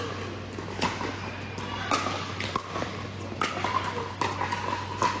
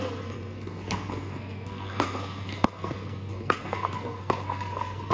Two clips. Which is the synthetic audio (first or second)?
second